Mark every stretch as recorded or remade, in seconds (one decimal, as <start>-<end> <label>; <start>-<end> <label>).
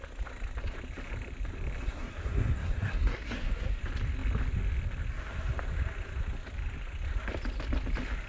0.0-1.8 recorded; 1.8-3.8 remade; 3.8-8.3 recorded